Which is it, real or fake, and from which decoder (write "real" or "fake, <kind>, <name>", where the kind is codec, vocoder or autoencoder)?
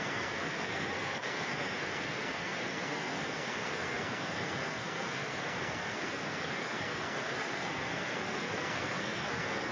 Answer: fake, codec, SNAC